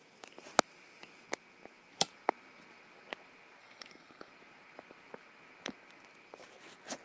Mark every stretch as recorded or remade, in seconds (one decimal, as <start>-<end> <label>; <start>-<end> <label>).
0.0-3.6 recorded; 3.6-4.3 remade; 4.3-7.0 recorded